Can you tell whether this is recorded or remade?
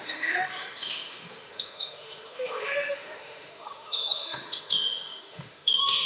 remade